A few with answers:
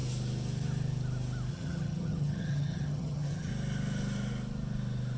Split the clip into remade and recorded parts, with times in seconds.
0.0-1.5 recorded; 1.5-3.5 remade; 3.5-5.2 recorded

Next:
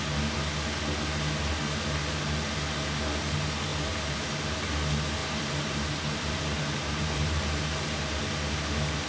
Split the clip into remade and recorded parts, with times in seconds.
0.0-3.7 recorded; 3.7-4.3 remade; 4.3-5.2 recorded; 5.2-8.2 remade; 8.2-9.1 recorded

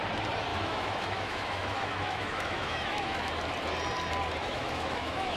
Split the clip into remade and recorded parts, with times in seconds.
0.0-0.5 recorded; 0.5-3.3 remade; 3.3-4.4 recorded; 4.4-5.4 remade